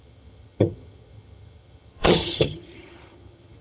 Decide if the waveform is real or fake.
fake